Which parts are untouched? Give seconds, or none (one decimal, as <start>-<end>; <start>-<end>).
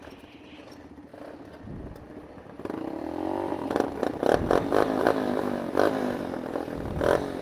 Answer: 0.0-3.6; 6.2-7.4